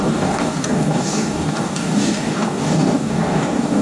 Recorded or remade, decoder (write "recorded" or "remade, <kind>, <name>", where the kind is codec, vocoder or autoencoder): remade, codec, DAC